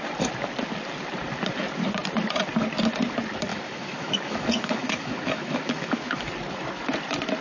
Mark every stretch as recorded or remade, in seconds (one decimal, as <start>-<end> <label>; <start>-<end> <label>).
0.0-3.5 recorded; 3.5-6.3 remade; 6.3-7.4 recorded